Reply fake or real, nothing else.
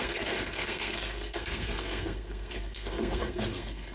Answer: fake